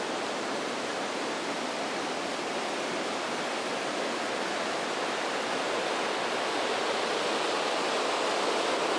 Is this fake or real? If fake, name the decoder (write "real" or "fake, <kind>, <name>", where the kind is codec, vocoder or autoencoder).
real